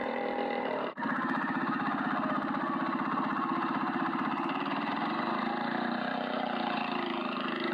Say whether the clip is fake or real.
fake